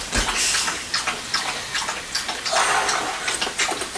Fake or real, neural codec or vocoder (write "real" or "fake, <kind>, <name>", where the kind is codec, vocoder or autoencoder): real